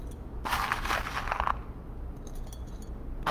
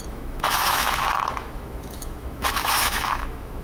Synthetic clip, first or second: second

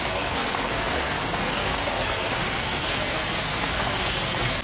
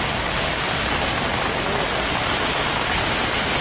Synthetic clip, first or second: first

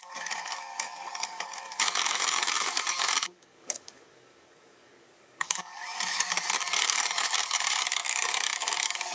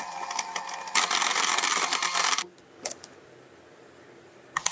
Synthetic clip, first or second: first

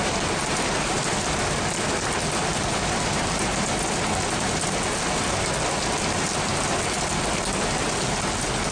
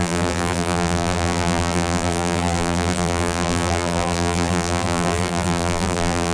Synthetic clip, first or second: second